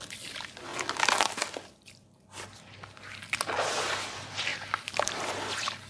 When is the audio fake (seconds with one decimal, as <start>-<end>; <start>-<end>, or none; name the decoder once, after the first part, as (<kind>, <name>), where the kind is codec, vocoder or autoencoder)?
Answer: none